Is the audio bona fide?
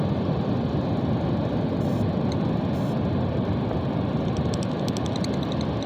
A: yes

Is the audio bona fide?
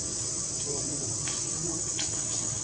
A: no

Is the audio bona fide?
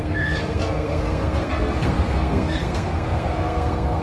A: no